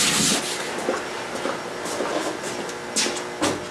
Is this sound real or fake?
real